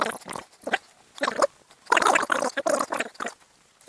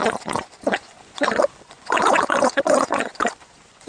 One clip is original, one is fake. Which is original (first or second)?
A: first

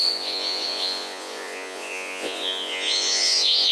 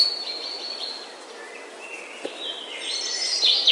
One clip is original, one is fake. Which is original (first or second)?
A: second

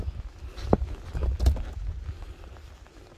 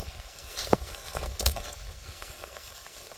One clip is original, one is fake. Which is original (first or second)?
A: first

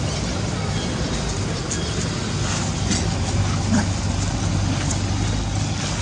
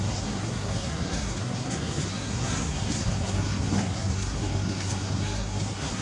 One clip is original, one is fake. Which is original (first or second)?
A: first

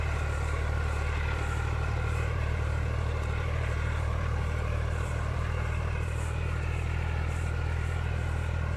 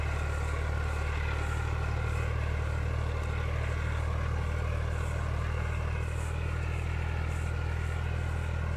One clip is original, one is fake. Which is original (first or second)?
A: second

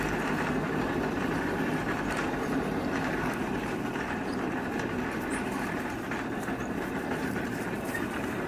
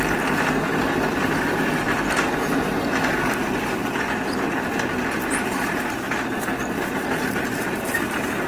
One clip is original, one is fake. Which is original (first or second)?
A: second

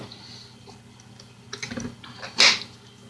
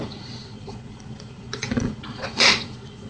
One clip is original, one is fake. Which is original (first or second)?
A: first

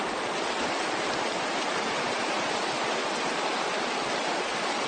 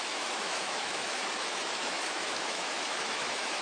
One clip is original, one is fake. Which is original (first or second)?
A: first